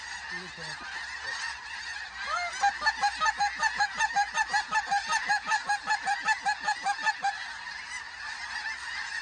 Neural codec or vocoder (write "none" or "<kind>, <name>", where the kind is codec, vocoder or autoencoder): none